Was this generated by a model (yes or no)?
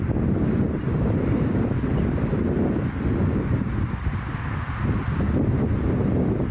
no